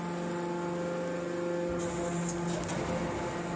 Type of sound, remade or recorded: recorded